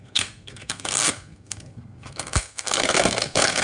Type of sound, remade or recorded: remade